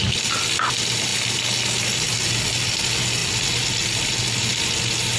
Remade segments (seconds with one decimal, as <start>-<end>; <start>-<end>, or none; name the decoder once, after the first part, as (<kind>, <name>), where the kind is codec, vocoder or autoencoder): none